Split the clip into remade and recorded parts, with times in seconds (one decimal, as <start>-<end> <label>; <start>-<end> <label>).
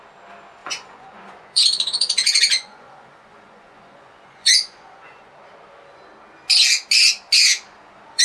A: 0.0-0.6 recorded; 0.6-5.3 remade; 5.3-7.5 recorded; 7.5-8.2 remade